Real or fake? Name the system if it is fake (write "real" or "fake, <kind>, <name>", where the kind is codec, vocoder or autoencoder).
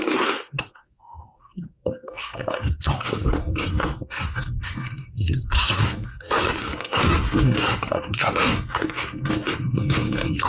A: fake, codec, SNAC